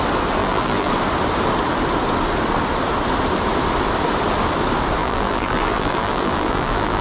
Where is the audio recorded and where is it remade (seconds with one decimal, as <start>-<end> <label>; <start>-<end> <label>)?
0.0-0.4 recorded; 0.4-0.9 remade; 0.9-5.0 recorded; 5.0-7.0 remade